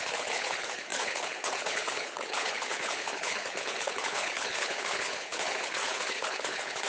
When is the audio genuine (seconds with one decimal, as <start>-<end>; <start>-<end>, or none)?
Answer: none